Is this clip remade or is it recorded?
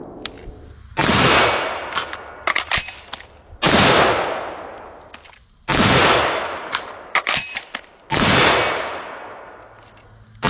recorded